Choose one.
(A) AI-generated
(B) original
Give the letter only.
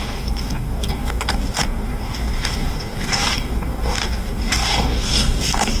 A